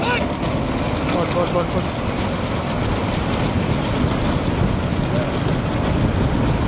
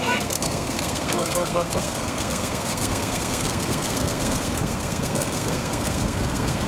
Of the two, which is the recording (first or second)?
first